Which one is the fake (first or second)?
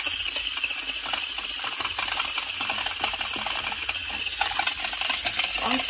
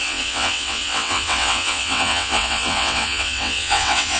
second